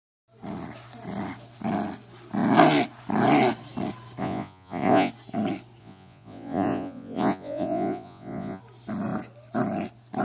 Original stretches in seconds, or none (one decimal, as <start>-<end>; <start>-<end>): 0.0-4.2; 5.1-5.8; 8.6-10.2